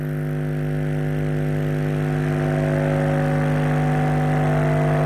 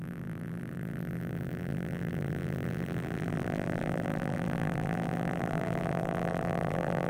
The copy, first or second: second